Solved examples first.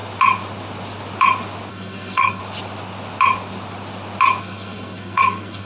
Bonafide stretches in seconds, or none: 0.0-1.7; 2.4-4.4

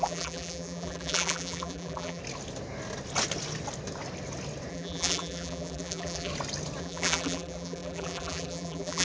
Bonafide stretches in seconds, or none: 2.2-4.7; 6.3-6.8

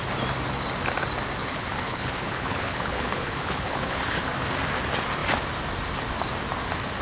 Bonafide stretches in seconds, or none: 0.0-1.4; 4.0-7.0